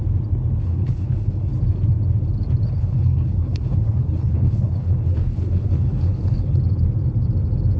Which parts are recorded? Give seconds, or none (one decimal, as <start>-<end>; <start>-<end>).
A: 0.0-0.6; 1.5-2.8; 6.6-7.8